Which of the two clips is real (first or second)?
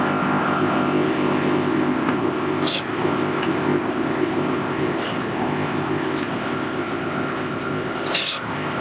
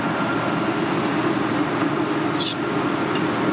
second